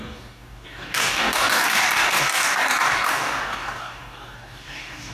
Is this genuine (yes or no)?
no